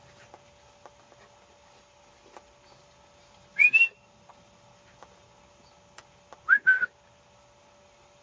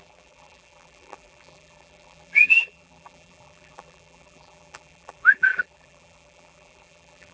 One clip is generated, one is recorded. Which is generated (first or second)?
second